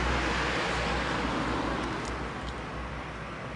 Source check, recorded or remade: recorded